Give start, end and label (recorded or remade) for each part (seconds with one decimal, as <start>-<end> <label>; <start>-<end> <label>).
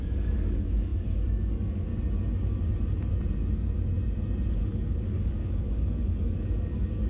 0.0-1.9 remade; 1.9-4.5 recorded; 4.5-7.1 remade